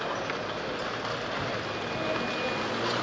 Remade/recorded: recorded